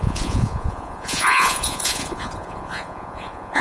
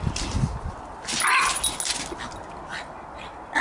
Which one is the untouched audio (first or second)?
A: second